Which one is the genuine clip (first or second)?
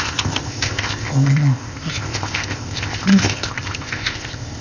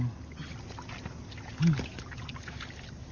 second